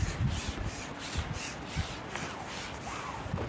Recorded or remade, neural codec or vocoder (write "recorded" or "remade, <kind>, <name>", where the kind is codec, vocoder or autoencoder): recorded